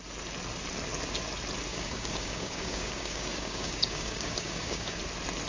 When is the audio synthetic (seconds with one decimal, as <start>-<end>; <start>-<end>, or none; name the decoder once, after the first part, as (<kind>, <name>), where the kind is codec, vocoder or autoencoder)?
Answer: 1.7-5.0 (codec, DAC)